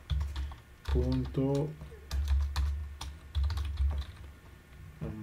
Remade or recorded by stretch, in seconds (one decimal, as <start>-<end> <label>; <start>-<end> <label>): 0.0-5.2 recorded